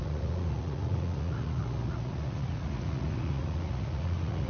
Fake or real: fake